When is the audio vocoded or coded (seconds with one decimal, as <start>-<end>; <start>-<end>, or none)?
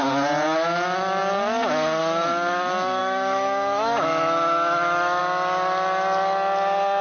3.0-5.2